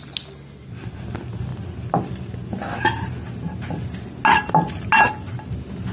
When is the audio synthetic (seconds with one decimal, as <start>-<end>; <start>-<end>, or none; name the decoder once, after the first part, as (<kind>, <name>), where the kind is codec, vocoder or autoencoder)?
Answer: none